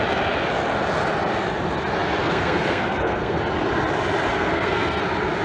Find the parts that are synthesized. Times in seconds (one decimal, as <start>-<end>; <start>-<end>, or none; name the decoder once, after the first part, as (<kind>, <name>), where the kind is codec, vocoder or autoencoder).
2.2-3.4 (codec, SNAC); 4.3-5.0